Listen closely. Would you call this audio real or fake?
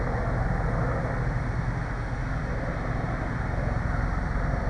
real